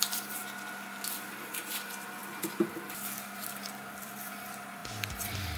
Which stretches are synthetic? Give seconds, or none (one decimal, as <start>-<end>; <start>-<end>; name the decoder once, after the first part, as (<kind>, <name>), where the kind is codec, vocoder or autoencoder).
0.0-0.4 (vocoder, BigVGAN v2); 1.1-2.2; 3.2-5.6